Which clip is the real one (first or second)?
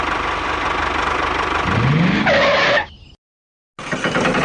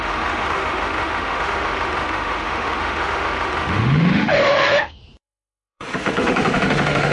first